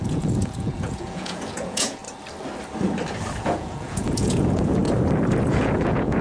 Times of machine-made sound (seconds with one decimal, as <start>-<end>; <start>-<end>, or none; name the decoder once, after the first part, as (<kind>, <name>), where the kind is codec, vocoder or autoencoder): 0.0-2.0 (vocoder, Vocos); 3.4-4.8; 5.4-6.2